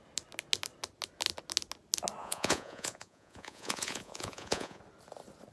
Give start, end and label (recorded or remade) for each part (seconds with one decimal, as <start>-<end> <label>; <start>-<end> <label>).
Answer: 0.0-2.2 recorded; 2.2-4.8 remade; 4.8-5.5 recorded

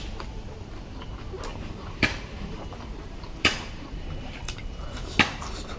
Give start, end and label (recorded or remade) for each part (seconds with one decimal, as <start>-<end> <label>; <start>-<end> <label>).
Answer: 0.0-1.5 recorded; 1.5-5.0 remade; 5.0-5.8 recorded

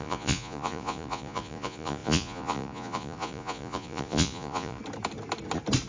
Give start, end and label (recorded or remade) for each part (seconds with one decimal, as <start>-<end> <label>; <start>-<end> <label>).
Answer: 0.0-4.8 remade; 4.8-5.9 recorded

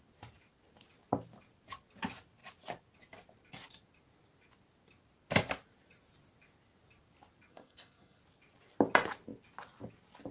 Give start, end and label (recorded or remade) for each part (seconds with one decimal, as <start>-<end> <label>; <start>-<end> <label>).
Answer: 0.0-7.5 recorded; 7.5-8.2 remade; 8.2-10.3 recorded

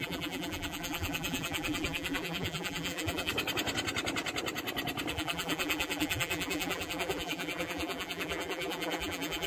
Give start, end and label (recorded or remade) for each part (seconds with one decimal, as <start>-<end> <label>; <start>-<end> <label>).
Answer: 0.0-3.3 remade; 3.3-5.1 recorded; 5.1-9.5 remade

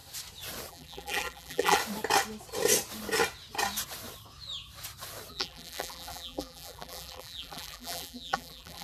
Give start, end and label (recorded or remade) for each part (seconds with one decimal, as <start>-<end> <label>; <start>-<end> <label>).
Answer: 0.0-0.7 recorded; 0.7-1.8 remade; 1.8-5.3 recorded; 5.3-8.8 remade